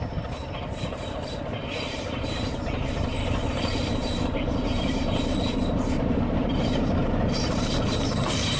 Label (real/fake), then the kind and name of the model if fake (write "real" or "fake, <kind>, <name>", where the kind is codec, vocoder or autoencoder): fake, vocoder, BigVGAN v2